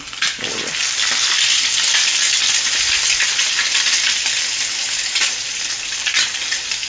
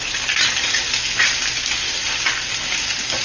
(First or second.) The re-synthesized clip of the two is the first